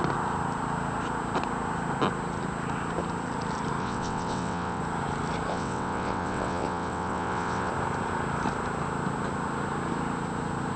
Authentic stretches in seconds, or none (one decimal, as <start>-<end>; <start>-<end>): 0.0-3.8; 4.8-5.5; 7.7-10.8

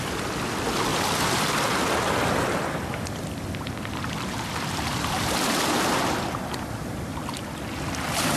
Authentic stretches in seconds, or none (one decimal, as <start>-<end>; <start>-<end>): 0.0-0.9; 5.9-8.4

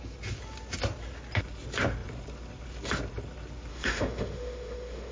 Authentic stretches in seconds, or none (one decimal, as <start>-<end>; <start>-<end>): 0.0-3.7